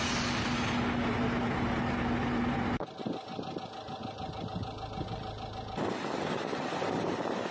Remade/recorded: recorded